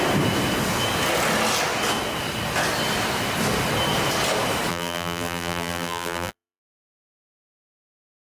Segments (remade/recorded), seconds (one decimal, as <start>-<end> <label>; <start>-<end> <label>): 0.0-4.7 recorded; 4.7-6.6 remade; 6.6-8.4 recorded